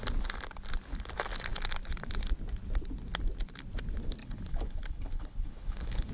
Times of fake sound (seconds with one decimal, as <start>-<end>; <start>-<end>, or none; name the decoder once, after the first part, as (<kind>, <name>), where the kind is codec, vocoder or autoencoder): 4.2-6.1 (codec, HILCodec)